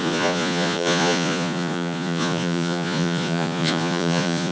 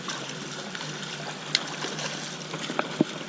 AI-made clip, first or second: first